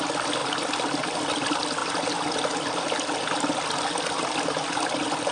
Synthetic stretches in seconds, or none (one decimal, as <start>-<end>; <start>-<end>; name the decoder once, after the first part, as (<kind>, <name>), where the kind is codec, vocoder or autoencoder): none